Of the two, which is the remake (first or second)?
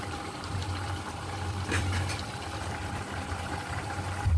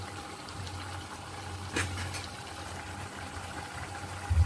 first